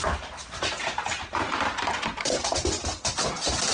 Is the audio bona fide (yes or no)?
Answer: no